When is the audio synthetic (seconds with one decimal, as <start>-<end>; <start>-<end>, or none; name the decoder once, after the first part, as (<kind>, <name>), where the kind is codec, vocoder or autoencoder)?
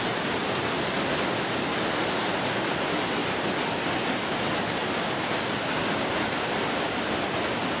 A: none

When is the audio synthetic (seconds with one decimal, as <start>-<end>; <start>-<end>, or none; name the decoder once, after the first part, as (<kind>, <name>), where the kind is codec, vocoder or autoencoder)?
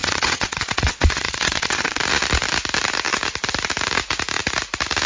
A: 0.0-2.0 (vocoder, WaveNeXt)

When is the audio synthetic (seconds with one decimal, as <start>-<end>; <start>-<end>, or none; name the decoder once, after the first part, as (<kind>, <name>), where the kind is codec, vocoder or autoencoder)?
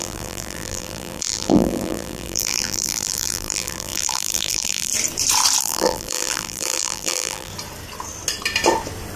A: 0.0-4.9 (vocoder, BigVGAN v2); 5.6-7.5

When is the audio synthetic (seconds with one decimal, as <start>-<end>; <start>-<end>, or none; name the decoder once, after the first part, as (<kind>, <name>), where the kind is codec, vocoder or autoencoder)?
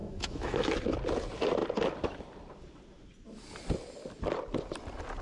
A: 0.0-0.7 (autoencoder, DAC-VAE)